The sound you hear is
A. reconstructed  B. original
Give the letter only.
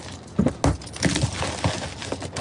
B